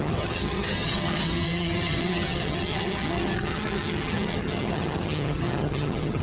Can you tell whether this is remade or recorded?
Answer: remade